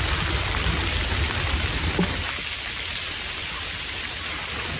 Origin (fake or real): real